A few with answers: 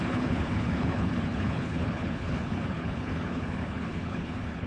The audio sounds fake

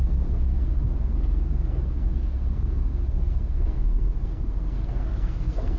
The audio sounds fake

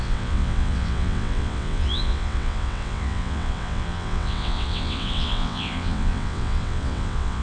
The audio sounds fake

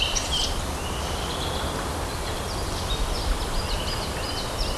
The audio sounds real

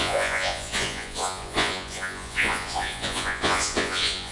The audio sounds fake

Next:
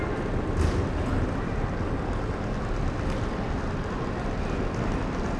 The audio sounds real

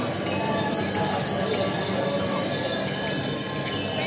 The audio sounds real